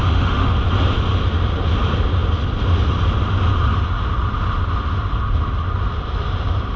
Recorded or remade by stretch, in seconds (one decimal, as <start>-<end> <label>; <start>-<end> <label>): 0.0-0.5 remade; 0.5-6.8 recorded